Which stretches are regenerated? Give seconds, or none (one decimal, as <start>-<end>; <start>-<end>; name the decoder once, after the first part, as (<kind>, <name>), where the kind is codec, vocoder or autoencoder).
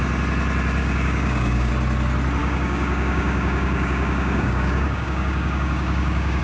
0.8-1.7 (codec, DAC); 2.4-6.4